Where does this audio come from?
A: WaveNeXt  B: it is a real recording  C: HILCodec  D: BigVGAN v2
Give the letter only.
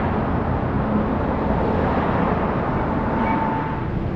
B